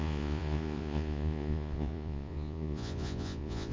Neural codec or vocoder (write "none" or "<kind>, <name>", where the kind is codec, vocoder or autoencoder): vocoder, Vocos